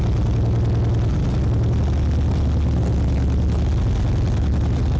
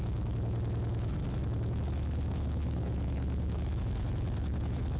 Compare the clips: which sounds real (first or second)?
first